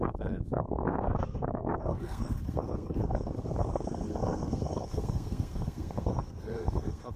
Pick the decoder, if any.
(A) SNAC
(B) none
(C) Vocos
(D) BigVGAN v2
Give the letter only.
A